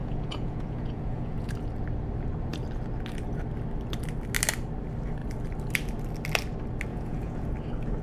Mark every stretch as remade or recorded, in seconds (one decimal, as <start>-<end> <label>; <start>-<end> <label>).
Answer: 0.0-1.5 remade; 1.5-6.9 recorded; 6.9-7.5 remade; 7.5-8.0 recorded